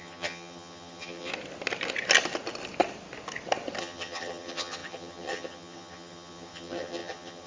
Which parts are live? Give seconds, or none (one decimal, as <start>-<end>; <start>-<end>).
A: 1.3-3.8